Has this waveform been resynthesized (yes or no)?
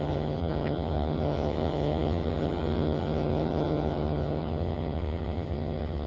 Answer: yes